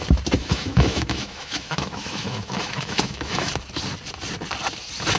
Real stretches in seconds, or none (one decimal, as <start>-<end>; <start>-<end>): 0.0-0.4; 3.5-5.2